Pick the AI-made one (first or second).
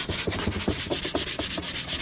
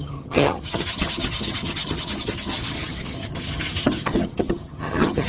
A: second